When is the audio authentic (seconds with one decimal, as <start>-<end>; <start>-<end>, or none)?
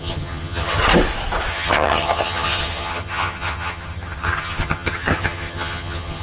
0.8-1.5